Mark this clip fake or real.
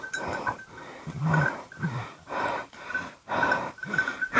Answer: fake